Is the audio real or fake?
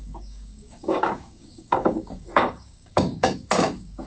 fake